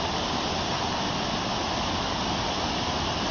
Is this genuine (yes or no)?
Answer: yes